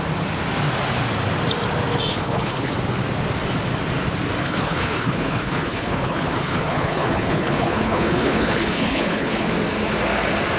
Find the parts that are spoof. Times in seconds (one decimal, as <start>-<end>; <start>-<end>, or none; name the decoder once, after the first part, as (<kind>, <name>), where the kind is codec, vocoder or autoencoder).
2.1-2.7 (codec, HILCodec); 4.4-9.5